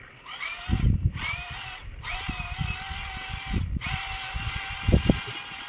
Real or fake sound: real